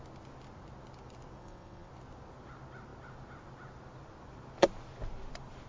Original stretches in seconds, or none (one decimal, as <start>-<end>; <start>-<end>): 0.0-1.4; 1.9-5.7